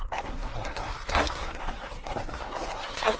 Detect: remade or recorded remade